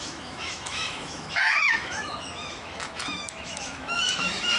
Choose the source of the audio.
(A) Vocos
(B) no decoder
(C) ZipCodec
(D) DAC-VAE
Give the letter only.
D